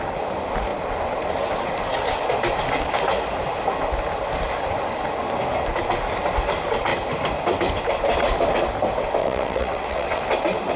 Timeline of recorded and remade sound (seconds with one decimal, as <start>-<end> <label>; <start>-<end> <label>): 0.0-9.2 recorded; 9.2-10.2 remade; 10.2-10.8 recorded